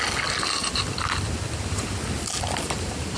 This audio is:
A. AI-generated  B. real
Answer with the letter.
B